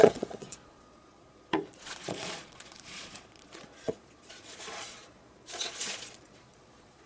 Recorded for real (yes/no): no